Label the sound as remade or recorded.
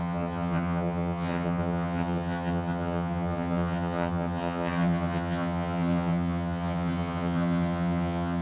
remade